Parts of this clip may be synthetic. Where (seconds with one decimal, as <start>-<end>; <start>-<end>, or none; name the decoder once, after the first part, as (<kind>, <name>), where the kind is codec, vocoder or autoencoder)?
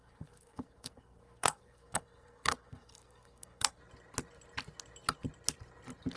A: 0.0-3.8 (codec, SNAC)